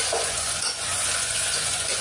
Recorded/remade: remade